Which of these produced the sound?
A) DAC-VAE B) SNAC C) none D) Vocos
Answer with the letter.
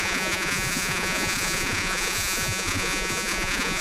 D